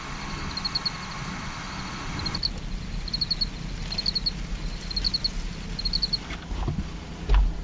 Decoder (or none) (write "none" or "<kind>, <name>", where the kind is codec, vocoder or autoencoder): none